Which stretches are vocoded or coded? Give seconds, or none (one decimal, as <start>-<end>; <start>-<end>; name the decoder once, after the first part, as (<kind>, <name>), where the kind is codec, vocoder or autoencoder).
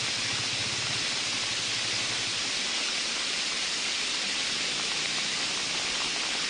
none